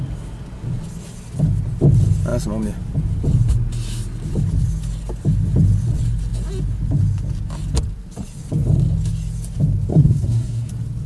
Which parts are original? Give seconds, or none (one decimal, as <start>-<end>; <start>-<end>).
0.0-9.9; 10.7-11.1